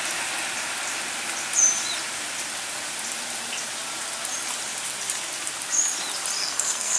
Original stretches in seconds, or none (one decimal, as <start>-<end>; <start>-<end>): 0.0-6.4